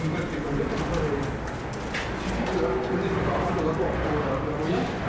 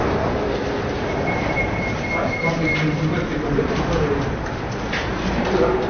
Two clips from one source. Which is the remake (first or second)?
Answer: second